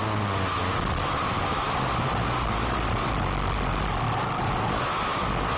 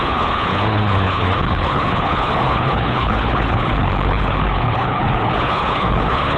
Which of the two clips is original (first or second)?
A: first